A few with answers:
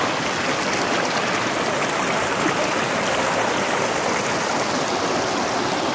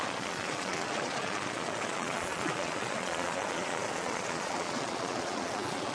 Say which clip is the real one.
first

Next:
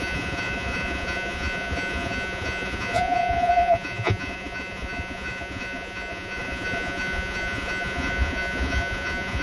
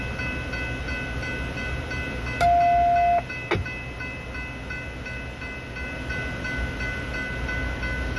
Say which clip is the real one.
second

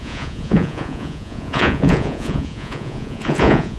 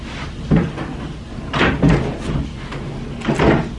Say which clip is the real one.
second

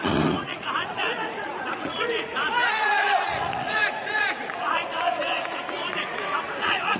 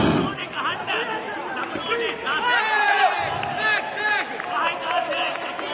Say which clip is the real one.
second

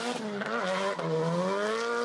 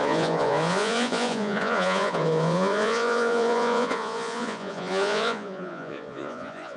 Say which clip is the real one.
first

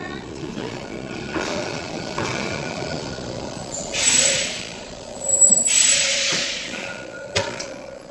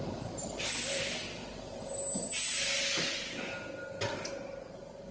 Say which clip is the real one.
second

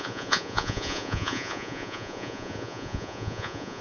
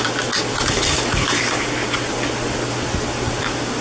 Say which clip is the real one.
second